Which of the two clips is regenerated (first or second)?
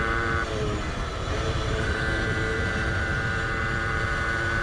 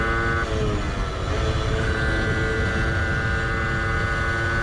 first